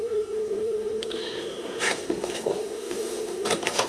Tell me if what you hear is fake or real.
fake